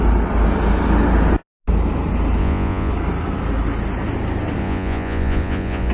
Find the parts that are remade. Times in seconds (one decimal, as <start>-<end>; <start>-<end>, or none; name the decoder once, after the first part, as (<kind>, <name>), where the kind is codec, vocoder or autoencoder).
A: 2.4-2.9 (vocoder, Vocos); 4.6-5.9